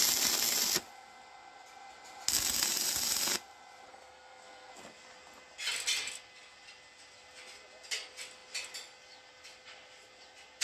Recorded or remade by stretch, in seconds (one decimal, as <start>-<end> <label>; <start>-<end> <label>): 0.0-3.9 recorded; 3.9-4.7 remade; 4.7-10.6 recorded